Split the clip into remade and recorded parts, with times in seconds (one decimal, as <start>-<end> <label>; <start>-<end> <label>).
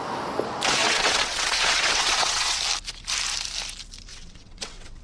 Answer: 0.0-0.8 recorded; 0.8-2.6 remade; 2.6-4.1 recorded; 4.1-5.0 remade